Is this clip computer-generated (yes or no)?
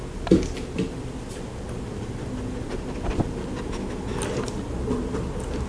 no